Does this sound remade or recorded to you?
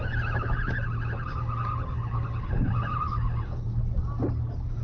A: recorded